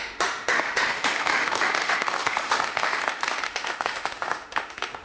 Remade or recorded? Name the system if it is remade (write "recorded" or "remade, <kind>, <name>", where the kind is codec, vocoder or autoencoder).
remade, autoencoder, DAC-VAE